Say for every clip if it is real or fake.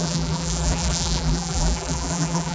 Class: fake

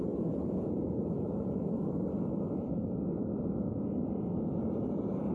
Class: real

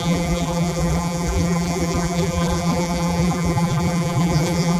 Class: fake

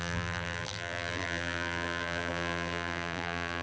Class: fake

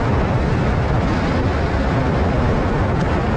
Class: real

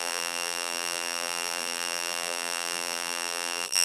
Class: fake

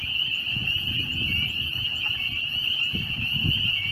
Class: real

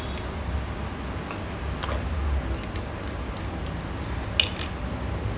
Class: real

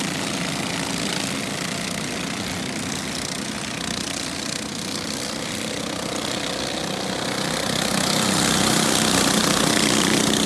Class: real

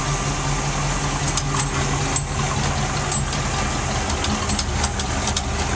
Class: real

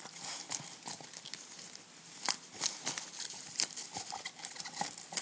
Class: real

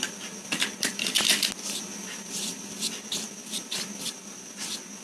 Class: real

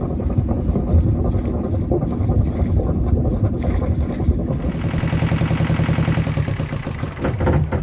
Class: real